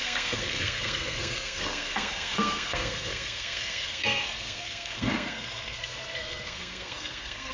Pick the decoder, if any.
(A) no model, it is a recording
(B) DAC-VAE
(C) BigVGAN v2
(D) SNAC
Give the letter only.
D